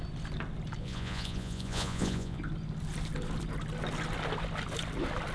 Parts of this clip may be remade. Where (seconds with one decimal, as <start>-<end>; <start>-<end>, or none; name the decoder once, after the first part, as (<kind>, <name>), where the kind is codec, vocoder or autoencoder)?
0.8-2.4 (vocoder, Vocos)